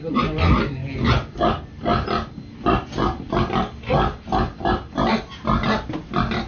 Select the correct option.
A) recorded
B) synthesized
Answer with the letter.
A